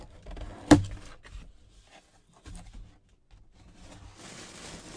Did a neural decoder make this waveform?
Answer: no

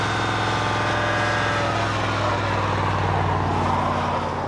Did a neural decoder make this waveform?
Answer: no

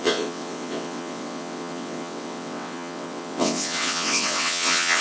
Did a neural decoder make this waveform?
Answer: yes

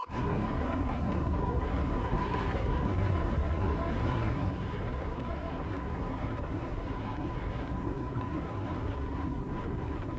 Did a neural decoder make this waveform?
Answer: yes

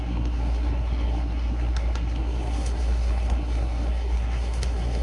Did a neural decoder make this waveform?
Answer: yes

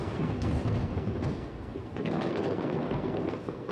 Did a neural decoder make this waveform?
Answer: yes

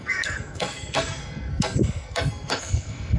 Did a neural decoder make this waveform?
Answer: yes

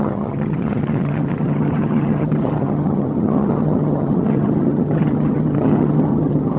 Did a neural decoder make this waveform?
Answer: yes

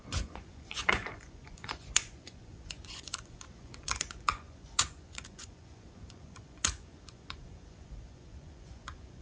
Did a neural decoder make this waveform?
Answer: yes